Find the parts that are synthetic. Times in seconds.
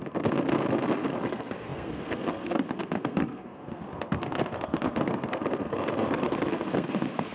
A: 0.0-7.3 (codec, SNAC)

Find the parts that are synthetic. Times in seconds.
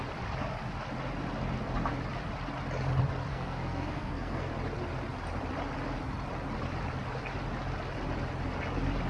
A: 3.3-4.5 (codec, SNAC)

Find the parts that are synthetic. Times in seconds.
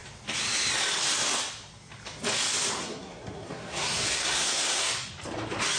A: 2.8-5.1 (codec, SNAC)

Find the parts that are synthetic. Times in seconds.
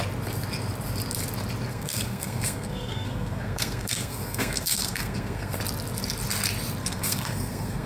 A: 1.7-5.6 (codec, SNAC); 6.8-7.9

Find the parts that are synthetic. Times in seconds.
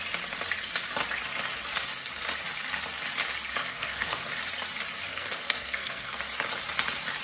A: 3.6-4.3 (codec, SNAC); 5.1-6.2